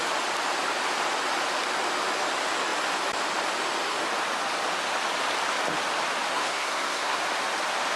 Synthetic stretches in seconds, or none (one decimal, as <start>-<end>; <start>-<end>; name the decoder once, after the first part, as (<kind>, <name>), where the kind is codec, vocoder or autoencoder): 6.3-7.2 (codec, SNAC)